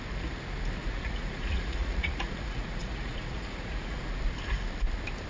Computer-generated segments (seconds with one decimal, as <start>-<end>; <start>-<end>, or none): 0.8-4.0